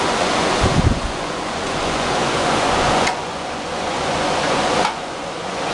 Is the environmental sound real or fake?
fake